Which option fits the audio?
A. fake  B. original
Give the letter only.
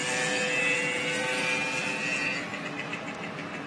B